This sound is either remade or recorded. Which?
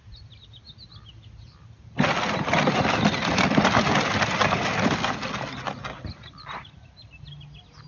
recorded